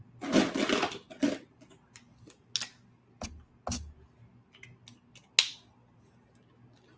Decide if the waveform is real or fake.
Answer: real